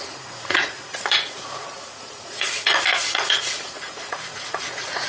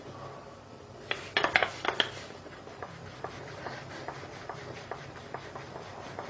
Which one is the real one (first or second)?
second